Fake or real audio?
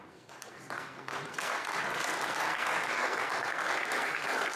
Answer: fake